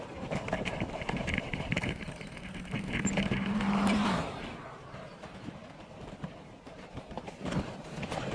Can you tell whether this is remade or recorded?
remade